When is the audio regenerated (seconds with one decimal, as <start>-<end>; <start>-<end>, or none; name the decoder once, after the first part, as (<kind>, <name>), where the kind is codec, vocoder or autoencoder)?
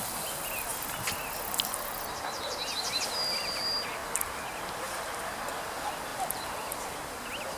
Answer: 6.1-6.7 (vocoder, BigVGAN v2)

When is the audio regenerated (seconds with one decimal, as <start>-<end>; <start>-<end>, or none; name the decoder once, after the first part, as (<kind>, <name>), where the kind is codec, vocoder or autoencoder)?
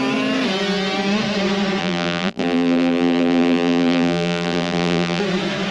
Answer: 1.8-5.2 (vocoder, BigVGAN v2)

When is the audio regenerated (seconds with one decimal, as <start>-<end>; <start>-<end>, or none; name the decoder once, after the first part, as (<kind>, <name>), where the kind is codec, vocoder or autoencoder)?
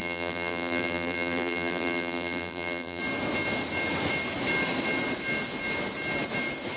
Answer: 0.0-3.0 (vocoder, BigVGAN v2)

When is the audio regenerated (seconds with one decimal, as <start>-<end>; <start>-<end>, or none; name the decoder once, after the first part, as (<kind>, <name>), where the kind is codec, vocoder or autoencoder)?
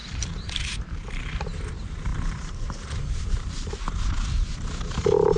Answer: 0.0-1.7 (vocoder, BigVGAN v2); 2.1-3.7